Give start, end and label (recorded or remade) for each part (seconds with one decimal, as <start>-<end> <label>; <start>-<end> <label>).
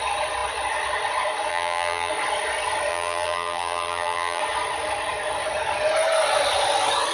0.0-1.5 recorded; 1.5-2.1 remade; 2.1-2.9 recorded; 2.9-4.4 remade; 4.4-7.1 recorded